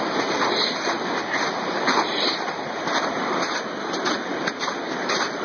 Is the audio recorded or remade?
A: remade